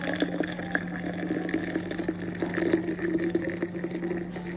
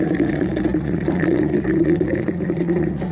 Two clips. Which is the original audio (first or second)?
first